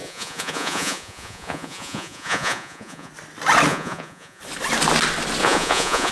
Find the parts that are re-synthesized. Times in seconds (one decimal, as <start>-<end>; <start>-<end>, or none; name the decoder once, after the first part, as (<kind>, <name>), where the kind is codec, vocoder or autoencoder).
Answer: 0.0-3.1 (vocoder, Vocos); 3.7-4.4; 5.4-6.1